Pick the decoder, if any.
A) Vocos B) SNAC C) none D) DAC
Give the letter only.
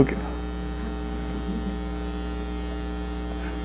C